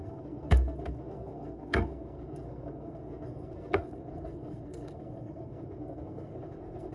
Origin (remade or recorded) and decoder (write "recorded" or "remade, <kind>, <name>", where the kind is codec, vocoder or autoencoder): remade, codec, SNAC